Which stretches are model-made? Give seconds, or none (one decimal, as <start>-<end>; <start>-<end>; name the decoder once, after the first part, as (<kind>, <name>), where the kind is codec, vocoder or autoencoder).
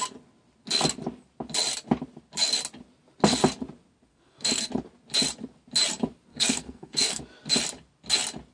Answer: 4.1-4.7 (codec, SNAC); 6.3-7.2